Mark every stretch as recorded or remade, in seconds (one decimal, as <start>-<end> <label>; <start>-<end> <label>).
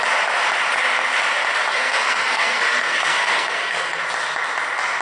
0.0-1.7 recorded; 1.7-4.0 remade; 4.0-5.0 recorded